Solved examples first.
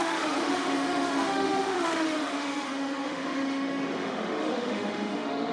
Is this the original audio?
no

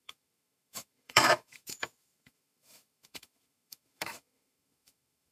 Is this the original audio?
no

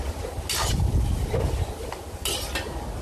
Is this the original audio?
yes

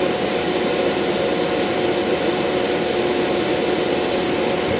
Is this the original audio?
yes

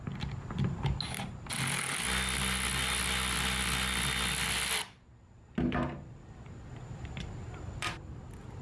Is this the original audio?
yes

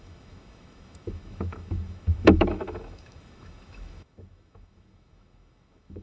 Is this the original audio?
no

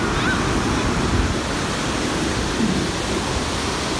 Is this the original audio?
yes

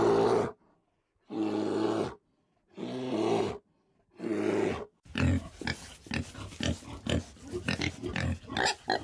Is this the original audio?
yes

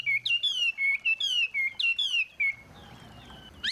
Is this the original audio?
yes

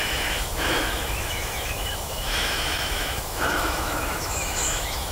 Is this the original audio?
no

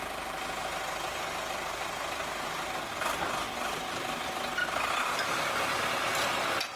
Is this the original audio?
yes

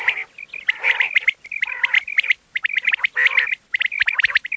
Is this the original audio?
yes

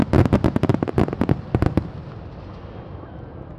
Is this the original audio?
yes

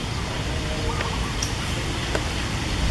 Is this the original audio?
yes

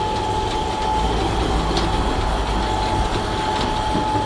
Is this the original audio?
yes